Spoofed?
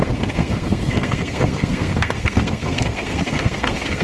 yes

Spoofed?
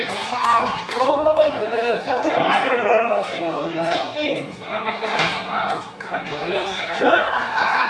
yes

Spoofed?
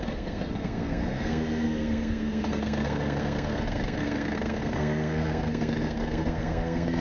yes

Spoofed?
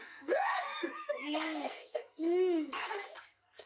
yes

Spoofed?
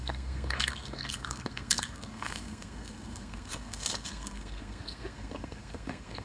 yes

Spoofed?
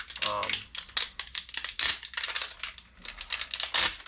no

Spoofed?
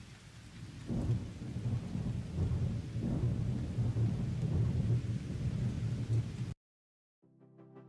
no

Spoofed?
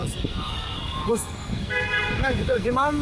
yes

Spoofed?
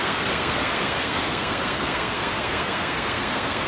yes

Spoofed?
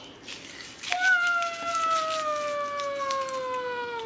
no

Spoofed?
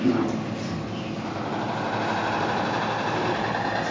no